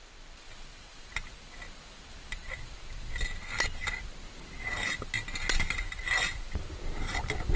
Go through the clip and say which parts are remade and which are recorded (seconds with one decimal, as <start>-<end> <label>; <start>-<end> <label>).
0.0-7.6 recorded